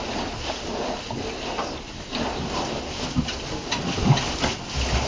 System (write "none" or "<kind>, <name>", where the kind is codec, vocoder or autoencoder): none